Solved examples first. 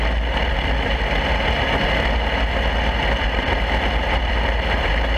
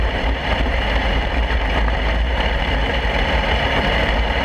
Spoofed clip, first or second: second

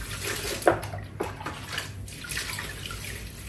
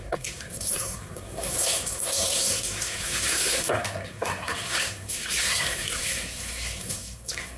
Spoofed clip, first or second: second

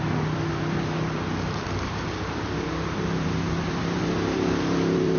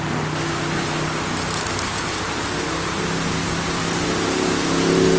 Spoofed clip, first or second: first